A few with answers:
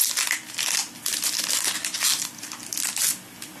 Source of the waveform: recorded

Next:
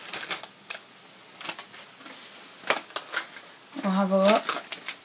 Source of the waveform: recorded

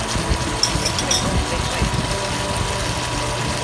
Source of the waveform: recorded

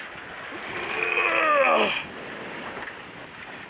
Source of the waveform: recorded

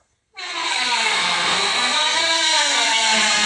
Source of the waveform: remade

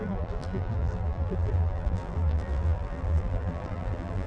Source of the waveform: remade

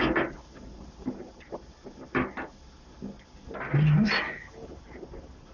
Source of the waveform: recorded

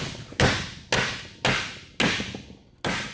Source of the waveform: recorded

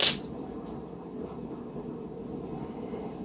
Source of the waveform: recorded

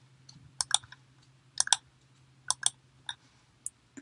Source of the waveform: recorded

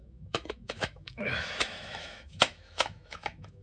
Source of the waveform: remade